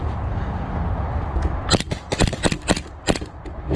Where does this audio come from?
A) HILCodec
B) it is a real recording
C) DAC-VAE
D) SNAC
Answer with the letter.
B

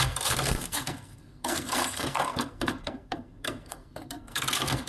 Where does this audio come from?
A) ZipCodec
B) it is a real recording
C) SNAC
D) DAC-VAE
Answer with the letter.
C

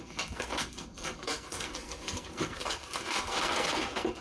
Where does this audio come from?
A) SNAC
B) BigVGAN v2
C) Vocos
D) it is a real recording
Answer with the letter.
A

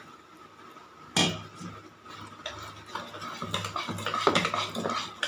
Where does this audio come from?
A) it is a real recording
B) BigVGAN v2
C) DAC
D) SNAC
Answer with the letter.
A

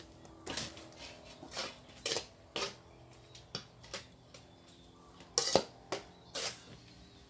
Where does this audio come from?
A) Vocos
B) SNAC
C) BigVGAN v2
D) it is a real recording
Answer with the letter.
D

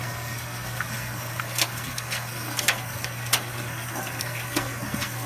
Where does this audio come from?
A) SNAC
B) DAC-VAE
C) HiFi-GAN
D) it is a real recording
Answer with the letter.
A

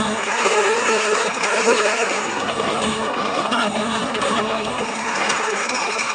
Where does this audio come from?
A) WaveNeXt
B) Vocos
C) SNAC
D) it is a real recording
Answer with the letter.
C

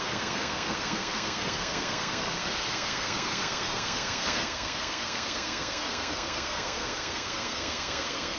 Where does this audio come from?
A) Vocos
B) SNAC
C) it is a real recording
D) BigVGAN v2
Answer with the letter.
B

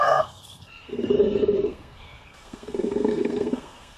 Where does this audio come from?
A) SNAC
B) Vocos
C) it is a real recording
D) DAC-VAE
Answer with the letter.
A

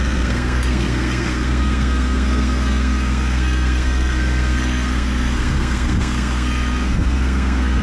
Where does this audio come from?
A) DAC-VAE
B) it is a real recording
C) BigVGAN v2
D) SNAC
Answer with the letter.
D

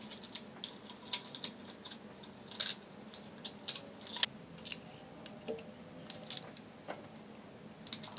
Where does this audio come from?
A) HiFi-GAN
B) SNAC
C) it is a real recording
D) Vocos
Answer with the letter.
C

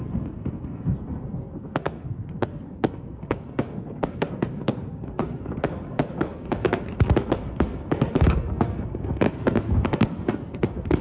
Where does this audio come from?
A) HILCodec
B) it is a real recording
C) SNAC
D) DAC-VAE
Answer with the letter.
C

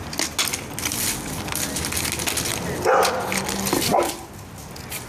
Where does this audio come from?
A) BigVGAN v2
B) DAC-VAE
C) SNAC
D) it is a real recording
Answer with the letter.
D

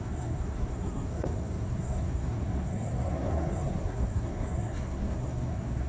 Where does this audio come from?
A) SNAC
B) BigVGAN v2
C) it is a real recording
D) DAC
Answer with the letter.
A